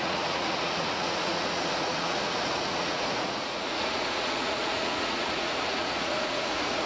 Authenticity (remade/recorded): remade